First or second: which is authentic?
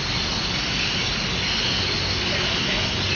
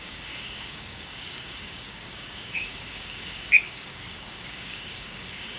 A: first